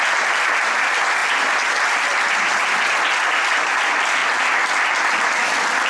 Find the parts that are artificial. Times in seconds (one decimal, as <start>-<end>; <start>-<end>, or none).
none